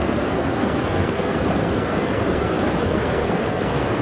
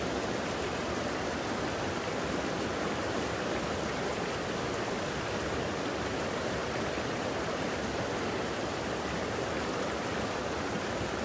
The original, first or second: second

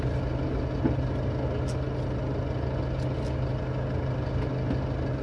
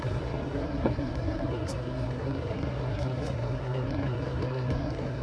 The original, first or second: first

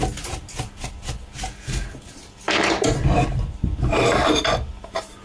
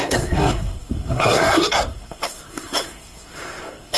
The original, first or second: first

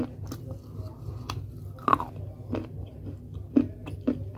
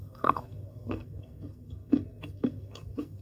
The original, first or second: first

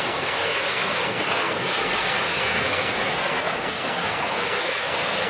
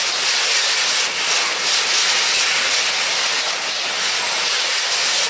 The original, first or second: second